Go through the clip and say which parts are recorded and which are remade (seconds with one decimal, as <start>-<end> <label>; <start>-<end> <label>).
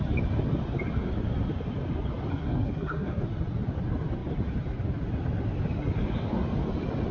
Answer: 0.0-2.3 recorded; 2.3-3.2 remade; 3.2-7.1 recorded